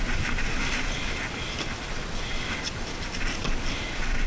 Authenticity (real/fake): real